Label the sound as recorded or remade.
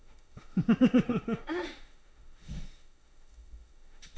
remade